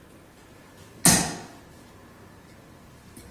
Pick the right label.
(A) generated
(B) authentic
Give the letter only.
B